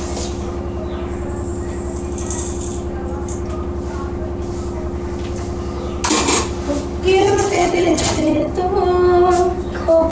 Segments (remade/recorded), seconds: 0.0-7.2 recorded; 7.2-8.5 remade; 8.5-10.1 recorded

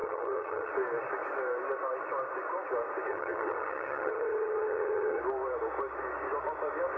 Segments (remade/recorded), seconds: 0.0-0.7 remade; 0.7-3.1 recorded; 3.1-5.2 remade; 5.2-7.0 recorded

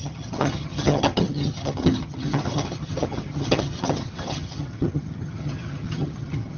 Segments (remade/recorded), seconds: 0.0-6.6 remade

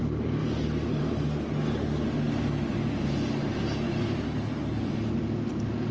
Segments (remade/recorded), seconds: 0.0-5.9 recorded

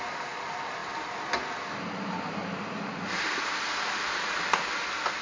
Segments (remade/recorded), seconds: 0.0-5.2 recorded

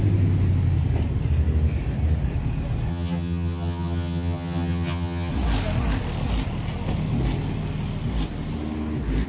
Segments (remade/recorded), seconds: 0.0-2.9 recorded; 2.9-5.3 remade; 5.3-9.3 recorded

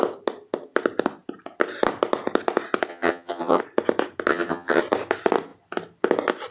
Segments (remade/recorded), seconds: 0.0-2.9 recorded; 2.9-3.6 remade; 3.6-4.3 recorded; 4.3-4.8 remade; 4.8-6.5 recorded